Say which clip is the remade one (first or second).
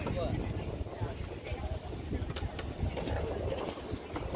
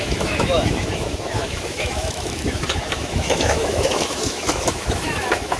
second